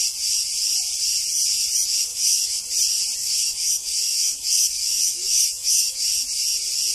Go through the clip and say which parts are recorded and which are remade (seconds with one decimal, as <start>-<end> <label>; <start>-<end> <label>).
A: 0.0-2.1 recorded; 2.1-2.6 remade; 2.6-3.2 recorded; 3.2-6.0 remade; 6.0-6.9 recorded